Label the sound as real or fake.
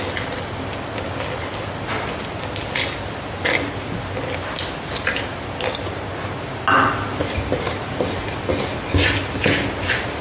real